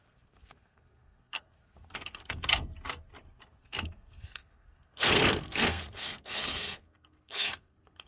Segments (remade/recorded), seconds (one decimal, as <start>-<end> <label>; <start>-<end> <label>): 0.0-2.7 remade; 2.7-3.6 recorded; 3.6-8.1 remade